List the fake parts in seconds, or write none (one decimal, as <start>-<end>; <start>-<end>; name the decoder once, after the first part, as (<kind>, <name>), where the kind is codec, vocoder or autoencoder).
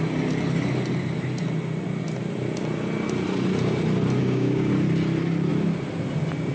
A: 4.2-4.7 (codec, DAC)